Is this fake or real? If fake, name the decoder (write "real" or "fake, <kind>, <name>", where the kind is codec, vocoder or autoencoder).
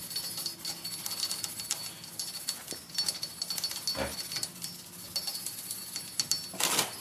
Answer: real